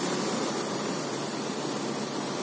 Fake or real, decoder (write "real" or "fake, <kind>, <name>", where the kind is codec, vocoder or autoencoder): real